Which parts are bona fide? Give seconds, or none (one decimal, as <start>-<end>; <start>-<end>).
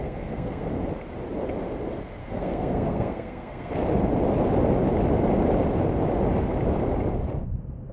0.7-2.2; 3.7-7.9